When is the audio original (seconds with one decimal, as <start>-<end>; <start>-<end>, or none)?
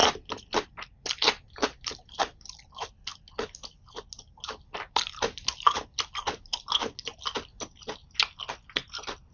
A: 0.0-9.3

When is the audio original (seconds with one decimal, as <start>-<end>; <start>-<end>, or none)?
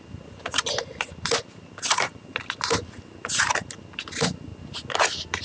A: 0.0-5.4